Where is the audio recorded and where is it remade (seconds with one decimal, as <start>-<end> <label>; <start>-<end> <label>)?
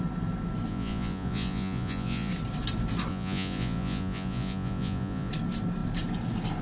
0.0-0.7 recorded; 0.7-2.3 remade; 2.3-3.1 recorded; 3.1-5.3 remade; 5.3-6.6 recorded